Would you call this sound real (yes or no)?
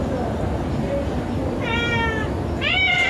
yes